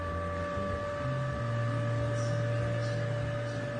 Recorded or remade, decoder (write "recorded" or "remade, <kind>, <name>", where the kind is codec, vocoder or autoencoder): recorded